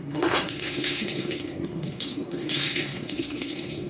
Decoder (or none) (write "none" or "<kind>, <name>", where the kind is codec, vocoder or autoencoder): codec, SNAC